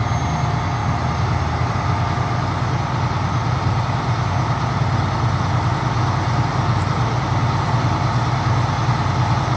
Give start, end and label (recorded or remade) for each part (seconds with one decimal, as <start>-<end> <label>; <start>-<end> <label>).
0.0-9.6 recorded